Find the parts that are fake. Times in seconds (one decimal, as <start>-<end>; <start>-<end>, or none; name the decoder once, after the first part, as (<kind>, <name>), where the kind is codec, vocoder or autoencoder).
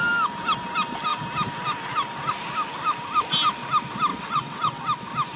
4.1-4.8 (vocoder, WaveNeXt)